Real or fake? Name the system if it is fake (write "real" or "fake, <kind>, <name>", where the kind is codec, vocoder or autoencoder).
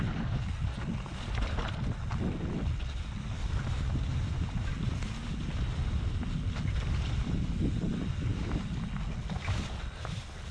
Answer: real